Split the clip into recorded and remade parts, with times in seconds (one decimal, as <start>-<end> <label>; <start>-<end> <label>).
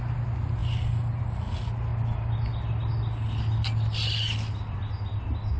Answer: 0.0-5.6 recorded